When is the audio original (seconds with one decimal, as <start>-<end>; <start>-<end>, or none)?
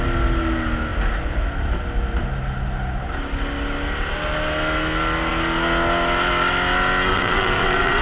0.0-7.1